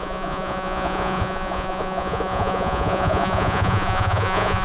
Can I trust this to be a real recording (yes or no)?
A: no